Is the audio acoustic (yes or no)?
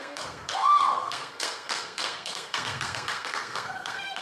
no